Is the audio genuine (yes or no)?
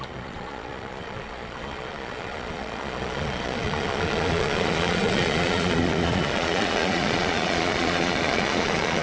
no